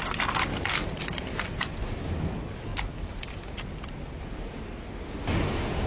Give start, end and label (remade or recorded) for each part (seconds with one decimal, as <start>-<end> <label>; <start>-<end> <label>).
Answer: 0.0-5.9 recorded